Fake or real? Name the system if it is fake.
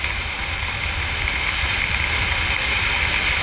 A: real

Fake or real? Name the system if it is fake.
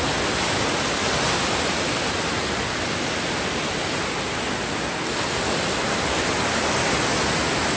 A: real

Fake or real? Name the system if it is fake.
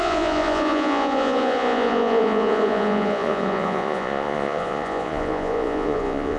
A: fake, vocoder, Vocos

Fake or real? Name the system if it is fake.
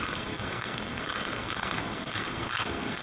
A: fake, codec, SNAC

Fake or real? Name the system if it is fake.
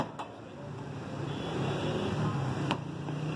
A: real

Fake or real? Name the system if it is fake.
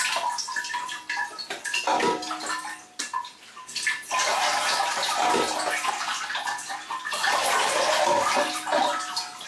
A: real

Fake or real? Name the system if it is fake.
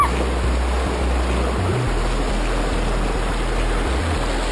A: real